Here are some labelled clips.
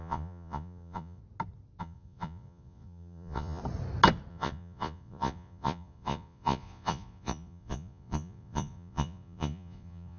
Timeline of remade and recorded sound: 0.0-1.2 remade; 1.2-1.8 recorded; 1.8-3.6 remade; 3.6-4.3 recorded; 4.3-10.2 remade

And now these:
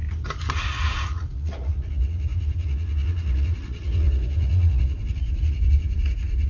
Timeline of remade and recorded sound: 0.0-0.6 recorded; 0.6-6.5 remade

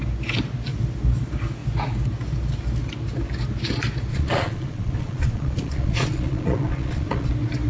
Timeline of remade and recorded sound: 0.0-4.1 recorded; 4.1-7.3 remade; 7.3-7.7 recorded

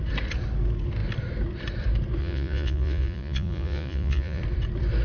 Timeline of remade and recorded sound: 0.0-2.2 recorded; 2.2-4.4 remade; 4.4-5.0 recorded